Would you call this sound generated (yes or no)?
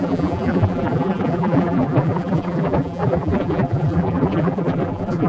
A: yes